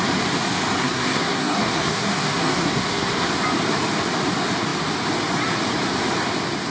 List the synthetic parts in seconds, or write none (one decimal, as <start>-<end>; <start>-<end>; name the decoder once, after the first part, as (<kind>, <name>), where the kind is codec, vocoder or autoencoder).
0.8-3.3 (codec, SNAC)